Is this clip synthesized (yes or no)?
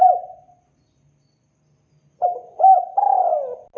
no